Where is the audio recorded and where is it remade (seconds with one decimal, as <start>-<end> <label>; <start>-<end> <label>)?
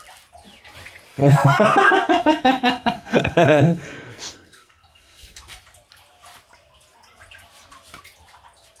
0.0-1.1 recorded; 1.1-5.6 remade; 5.6-8.8 recorded